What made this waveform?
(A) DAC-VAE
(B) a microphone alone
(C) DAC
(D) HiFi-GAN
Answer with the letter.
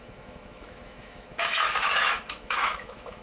A